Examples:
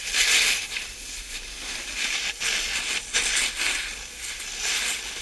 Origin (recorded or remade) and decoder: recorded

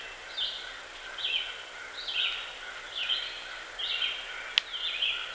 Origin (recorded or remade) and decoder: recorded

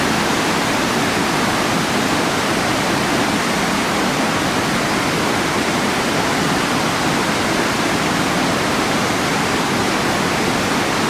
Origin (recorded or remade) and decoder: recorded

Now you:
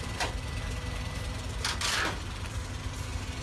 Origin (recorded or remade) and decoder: remade, vocoder, BigVGAN v2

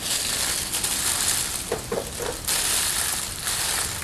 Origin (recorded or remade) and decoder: recorded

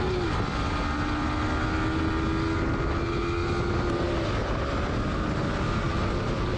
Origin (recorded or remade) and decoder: recorded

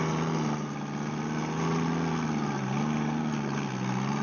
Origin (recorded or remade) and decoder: recorded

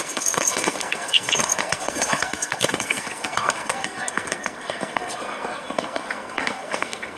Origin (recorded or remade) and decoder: remade, codec, SNAC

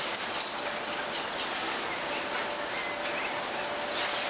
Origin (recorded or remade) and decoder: recorded